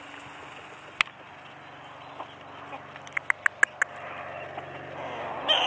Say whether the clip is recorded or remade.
recorded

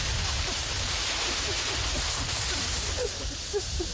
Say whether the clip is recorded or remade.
remade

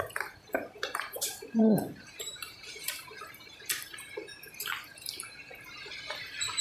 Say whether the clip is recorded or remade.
remade